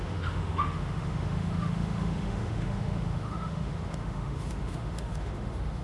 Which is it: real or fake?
fake